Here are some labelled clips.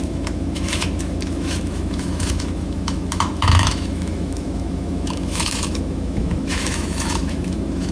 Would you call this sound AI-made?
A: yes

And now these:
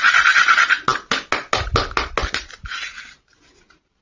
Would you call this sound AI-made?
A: no